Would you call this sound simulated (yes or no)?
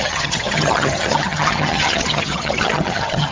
yes